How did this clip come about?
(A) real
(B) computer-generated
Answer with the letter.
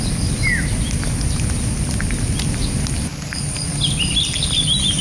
A